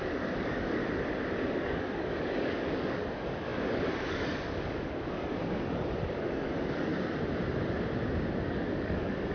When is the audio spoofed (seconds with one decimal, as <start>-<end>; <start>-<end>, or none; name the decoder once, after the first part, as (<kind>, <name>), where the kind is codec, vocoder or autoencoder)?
0.0-0.8 (codec, DAC); 1.5-6.9; 8.4-9.3